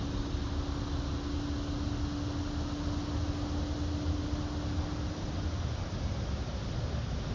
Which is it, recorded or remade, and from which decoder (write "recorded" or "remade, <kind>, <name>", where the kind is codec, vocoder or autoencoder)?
recorded